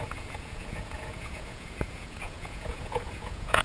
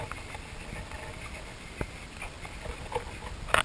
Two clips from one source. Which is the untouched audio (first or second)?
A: second